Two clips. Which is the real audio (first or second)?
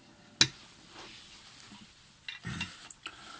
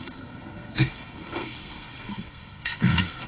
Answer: first